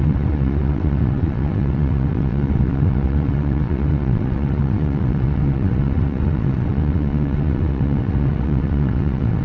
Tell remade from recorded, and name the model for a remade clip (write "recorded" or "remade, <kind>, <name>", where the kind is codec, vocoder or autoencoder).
remade, vocoder, WaveNeXt